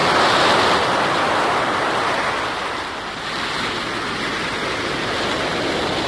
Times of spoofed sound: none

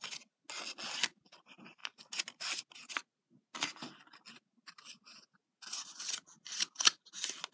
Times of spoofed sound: none

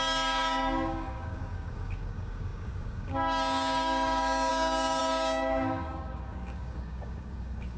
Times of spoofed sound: 0.0-7.8 (codec, DAC)